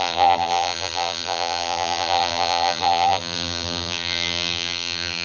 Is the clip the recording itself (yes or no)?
no